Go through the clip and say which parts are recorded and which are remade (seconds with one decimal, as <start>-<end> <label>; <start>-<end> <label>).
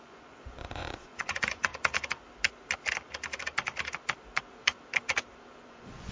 0.0-1.7 remade; 1.7-5.4 recorded; 5.4-6.1 remade